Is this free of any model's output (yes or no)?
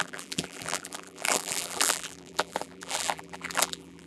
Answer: no